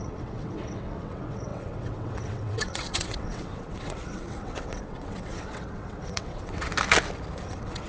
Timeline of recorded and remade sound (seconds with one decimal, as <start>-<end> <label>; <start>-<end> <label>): 0.0-6.7 remade; 6.7-7.4 recorded; 7.4-7.9 remade